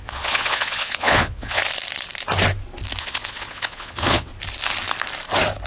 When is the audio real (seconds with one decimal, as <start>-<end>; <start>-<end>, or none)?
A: 1.6-3.0; 4.3-5.7